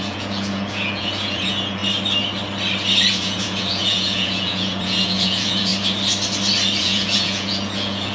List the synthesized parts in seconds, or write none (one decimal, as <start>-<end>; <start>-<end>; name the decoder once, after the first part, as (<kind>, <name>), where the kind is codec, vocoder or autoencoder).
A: 0.0-1.8 (vocoder, Vocos); 3.1-5.7; 6.8-8.1